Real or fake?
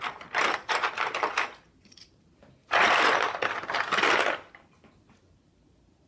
real